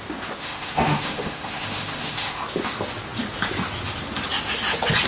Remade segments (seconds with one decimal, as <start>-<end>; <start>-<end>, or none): 0.4-2.4